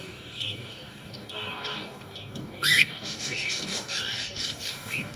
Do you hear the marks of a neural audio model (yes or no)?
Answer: yes